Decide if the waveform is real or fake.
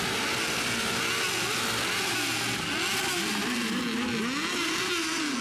real